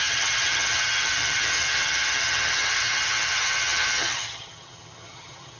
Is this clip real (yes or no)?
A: no